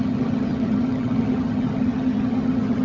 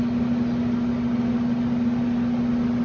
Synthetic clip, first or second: first